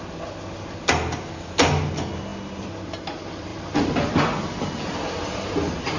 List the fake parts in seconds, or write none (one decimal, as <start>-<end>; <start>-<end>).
3.5-4.1